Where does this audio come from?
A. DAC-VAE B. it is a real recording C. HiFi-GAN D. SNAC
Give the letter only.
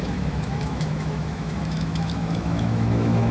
A